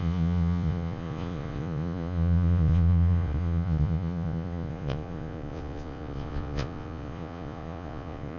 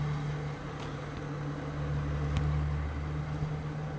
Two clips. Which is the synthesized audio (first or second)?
first